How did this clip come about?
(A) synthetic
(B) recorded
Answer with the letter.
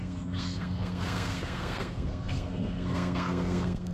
A